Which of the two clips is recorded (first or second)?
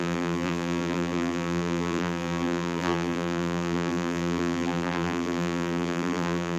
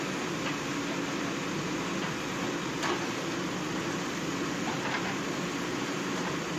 second